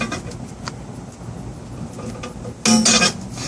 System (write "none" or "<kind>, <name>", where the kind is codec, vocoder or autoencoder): none